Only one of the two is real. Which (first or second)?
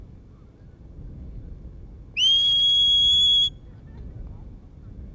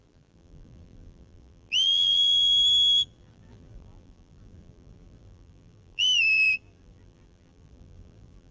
first